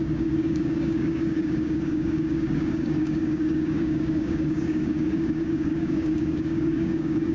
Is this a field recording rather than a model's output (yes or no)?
no